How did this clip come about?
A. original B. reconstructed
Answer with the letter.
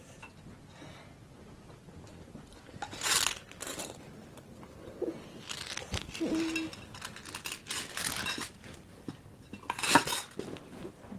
A